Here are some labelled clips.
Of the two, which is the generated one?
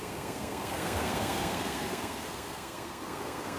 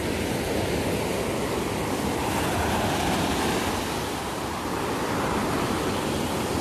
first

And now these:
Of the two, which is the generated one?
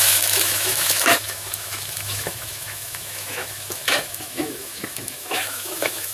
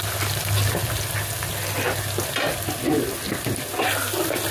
first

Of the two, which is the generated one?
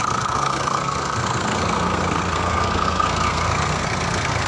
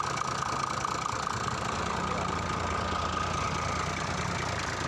first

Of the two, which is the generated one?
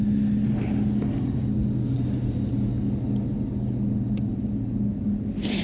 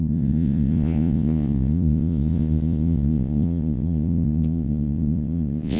second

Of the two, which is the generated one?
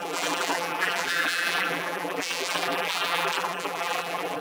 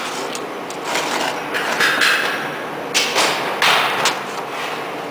first